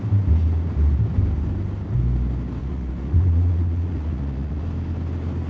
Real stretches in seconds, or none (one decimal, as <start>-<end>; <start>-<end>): 0.0-2.6; 4.6-5.5